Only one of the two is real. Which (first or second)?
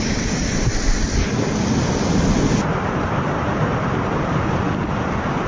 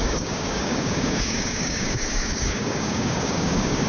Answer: first